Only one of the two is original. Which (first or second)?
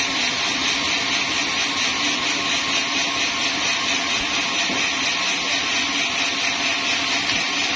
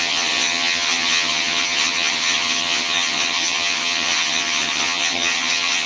first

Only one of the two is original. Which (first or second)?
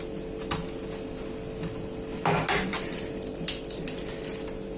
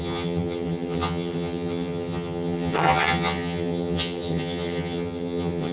first